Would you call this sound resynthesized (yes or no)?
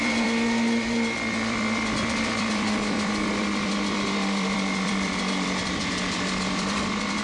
yes